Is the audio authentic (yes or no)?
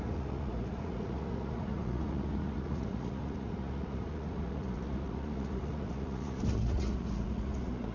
no